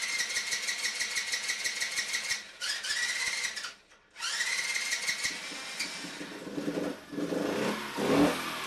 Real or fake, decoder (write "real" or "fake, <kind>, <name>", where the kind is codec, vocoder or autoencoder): real